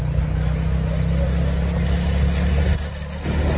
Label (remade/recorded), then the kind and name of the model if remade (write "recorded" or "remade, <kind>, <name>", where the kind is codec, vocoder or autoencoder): recorded